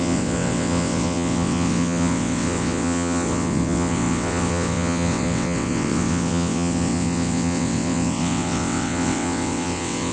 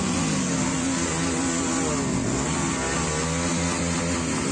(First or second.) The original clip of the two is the second